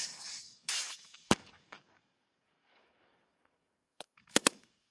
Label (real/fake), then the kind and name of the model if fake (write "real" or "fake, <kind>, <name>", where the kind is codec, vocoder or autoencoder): fake, codec, DAC